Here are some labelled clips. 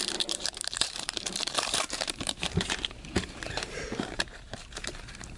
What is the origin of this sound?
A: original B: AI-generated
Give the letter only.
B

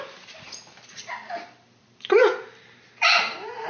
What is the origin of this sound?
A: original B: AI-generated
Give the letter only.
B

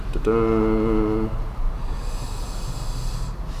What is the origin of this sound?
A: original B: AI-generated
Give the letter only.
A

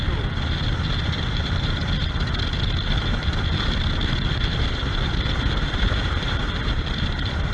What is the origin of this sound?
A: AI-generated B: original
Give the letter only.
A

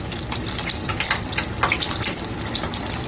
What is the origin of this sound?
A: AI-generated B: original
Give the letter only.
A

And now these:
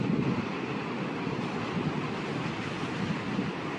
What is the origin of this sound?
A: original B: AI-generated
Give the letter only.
A